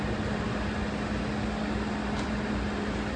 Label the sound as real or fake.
real